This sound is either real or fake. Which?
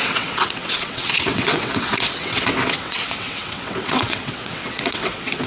fake